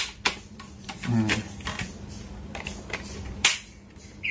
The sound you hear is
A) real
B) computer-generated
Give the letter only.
A